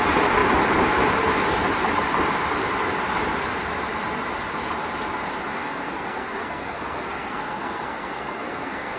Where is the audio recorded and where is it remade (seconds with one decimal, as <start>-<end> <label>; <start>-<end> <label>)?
0.0-5.5 recorded; 5.5-9.0 remade